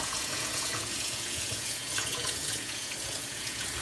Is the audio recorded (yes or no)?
no